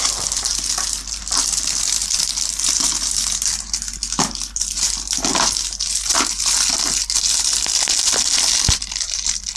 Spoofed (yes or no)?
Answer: no